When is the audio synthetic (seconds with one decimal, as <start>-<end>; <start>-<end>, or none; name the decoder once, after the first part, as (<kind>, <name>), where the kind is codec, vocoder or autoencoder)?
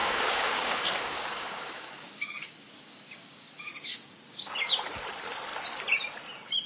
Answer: 0.0-3.7 (codec, DAC)